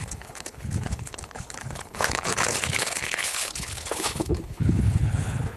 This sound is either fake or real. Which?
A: fake